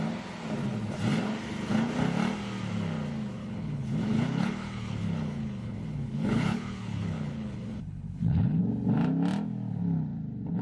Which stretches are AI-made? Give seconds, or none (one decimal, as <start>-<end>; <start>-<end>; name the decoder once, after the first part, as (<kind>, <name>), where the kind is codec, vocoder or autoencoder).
3.4-8.6 (codec, HILCodec)